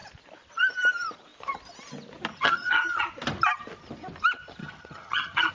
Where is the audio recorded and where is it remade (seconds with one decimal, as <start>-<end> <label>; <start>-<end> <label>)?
0.0-2.3 recorded; 2.3-3.0 remade; 3.0-4.6 recorded; 4.6-5.5 remade